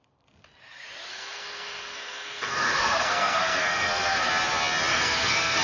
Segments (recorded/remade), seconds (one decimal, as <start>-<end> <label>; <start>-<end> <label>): 0.0-1.1 recorded; 1.1-4.3 remade; 4.3-4.9 recorded; 4.9-5.6 remade